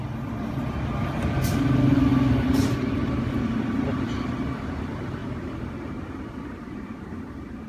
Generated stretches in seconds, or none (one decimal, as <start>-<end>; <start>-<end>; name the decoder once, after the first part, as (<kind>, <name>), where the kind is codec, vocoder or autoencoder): 2.1-4.8 (vocoder, BigVGAN v2); 5.2-7.3